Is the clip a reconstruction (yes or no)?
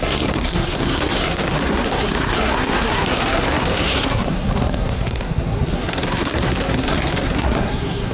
yes